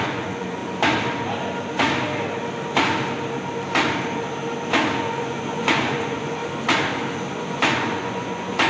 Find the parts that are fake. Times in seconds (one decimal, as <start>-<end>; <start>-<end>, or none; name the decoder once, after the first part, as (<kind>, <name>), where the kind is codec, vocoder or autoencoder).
0.0-0.6 (vocoder, Vocos); 5.0-6.4; 7.3-8.7